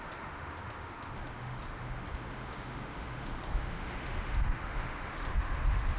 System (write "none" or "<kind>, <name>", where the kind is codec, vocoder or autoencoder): autoencoder, DAC-VAE